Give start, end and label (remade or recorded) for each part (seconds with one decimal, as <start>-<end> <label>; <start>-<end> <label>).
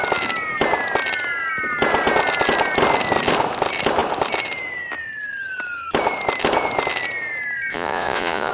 0.0-7.7 recorded; 7.7-8.5 remade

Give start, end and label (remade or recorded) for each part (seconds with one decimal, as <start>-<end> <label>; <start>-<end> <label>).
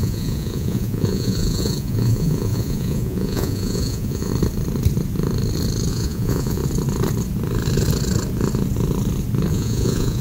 0.0-4.3 remade; 4.3-5.9 recorded; 5.9-6.6 remade; 6.6-9.5 recorded; 9.5-10.2 remade